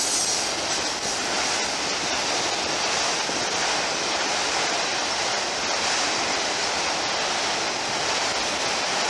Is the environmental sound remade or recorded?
recorded